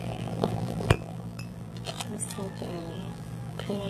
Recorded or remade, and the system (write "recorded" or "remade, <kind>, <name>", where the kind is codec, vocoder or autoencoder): remade, vocoder, BigVGAN v2